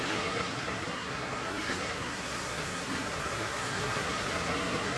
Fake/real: fake